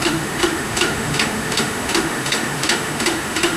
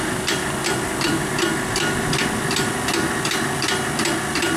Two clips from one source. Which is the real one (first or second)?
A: second